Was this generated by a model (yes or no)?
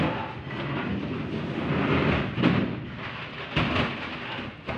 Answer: no